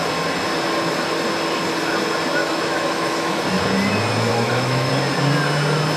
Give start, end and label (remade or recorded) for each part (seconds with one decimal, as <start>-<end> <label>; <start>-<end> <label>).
0.0-2.4 recorded; 2.4-3.4 remade; 3.4-4.3 recorded; 4.3-4.9 remade; 4.9-6.0 recorded